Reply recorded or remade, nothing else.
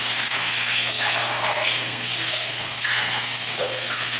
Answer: remade